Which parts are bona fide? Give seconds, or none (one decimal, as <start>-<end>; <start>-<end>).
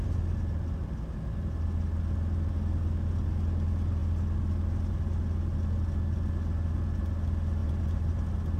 0.0-7.6; 8.1-8.6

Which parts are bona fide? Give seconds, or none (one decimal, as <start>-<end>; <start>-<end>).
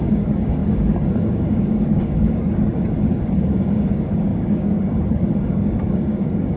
none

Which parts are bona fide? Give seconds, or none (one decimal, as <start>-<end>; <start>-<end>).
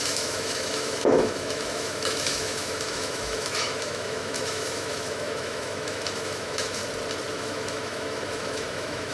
6.8-7.3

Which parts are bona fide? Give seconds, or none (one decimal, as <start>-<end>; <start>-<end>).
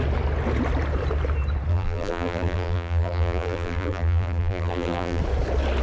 0.0-1.7; 5.2-5.8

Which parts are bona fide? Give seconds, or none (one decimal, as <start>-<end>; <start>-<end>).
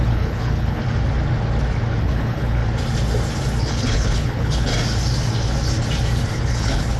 0.8-2.0; 2.6-3.6; 4.7-6.5